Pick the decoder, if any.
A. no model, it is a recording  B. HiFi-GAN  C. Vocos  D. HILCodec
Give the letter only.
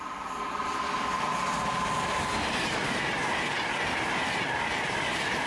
A